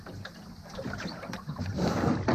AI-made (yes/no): yes